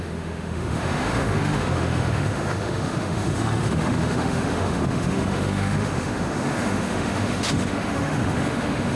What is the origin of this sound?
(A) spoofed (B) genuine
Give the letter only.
A